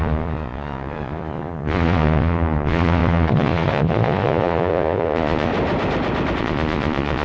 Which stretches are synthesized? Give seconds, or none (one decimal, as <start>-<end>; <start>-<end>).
0.0-5.5; 6.4-7.2